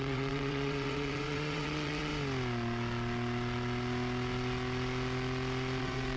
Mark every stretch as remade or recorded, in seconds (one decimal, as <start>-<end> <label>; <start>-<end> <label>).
0.0-2.1 remade; 2.1-5.8 recorded; 5.8-6.2 remade